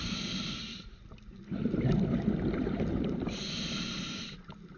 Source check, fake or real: real